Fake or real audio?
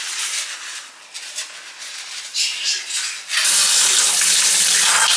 real